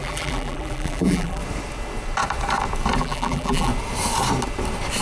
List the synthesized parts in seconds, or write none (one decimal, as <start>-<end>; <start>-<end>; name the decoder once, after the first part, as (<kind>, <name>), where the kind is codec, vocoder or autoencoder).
0.0-1.4 (vocoder, BigVGAN v2); 3.0-3.7